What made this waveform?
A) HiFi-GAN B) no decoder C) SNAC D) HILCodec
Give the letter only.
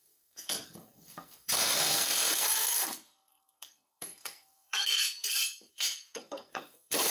C